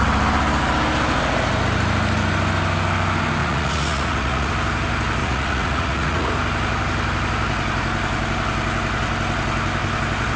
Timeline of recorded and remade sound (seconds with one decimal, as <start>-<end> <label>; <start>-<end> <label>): 0.0-3.4 recorded; 3.4-4.5 remade; 4.5-5.2 recorded; 5.2-6.3 remade; 6.3-10.4 recorded